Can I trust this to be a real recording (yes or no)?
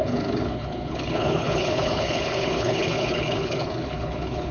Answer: no